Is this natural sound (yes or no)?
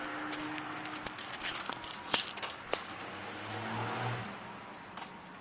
yes